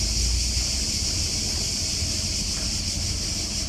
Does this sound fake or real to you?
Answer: real